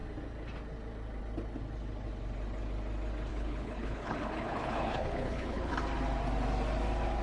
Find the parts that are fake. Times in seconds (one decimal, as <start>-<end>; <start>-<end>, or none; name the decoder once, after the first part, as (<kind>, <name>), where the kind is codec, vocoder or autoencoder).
3.3-5.7 (codec, HILCodec)